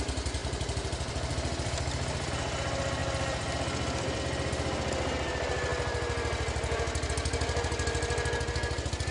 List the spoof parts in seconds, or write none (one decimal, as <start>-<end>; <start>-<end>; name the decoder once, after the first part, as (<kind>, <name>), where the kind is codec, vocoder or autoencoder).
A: 0.4-2.3 (vocoder, BigVGAN v2); 3.0-4.2